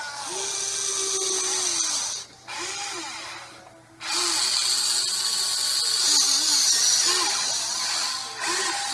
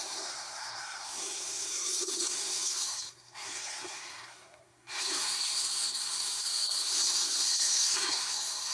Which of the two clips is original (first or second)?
first